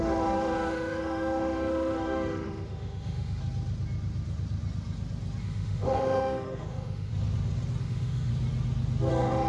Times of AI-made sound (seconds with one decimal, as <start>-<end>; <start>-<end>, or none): 0.0-3.4; 5.4-7.1; 7.8-8.3; 9.1-9.5